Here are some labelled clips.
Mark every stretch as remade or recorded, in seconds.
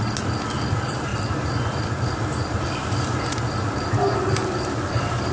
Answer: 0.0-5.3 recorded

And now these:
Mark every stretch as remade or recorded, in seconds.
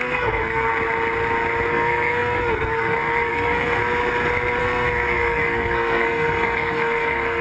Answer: 0.0-0.7 remade; 0.7-1.7 recorded; 1.7-3.8 remade; 3.8-4.6 recorded; 4.6-7.4 remade